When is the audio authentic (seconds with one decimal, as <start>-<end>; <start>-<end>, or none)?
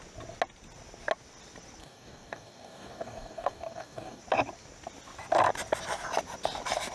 0.0-1.8; 4.2-6.9